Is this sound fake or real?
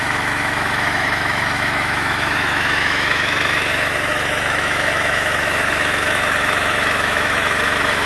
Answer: fake